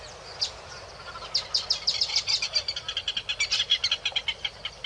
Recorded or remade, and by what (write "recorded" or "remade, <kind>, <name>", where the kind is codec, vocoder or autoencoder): recorded